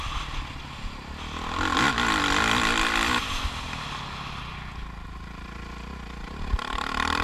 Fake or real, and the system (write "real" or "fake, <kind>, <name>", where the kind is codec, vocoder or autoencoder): real